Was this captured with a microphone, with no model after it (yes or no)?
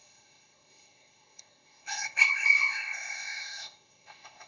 no